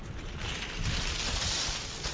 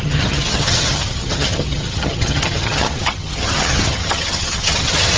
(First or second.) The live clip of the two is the first